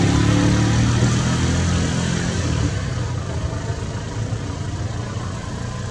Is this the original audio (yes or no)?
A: yes